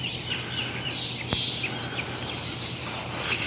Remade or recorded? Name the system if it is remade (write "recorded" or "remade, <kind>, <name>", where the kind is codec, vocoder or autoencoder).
recorded